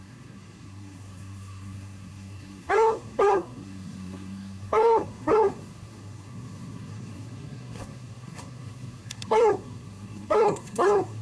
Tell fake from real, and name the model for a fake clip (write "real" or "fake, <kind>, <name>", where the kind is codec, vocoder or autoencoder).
fake, codec, SNAC